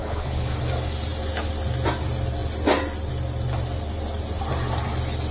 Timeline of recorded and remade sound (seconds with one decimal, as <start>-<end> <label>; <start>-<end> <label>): 0.0-0.5 remade; 0.5-5.3 recorded